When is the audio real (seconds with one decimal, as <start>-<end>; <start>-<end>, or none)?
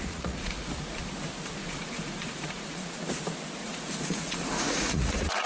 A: 1.1-1.6; 3.1-3.6